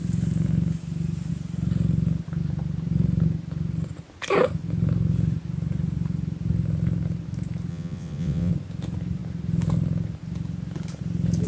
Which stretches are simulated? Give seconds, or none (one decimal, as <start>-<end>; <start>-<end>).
7.7-8.5